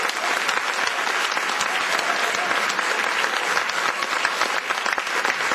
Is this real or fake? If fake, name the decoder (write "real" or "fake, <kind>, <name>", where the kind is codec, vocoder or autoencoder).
real